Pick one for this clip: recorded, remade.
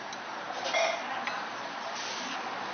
recorded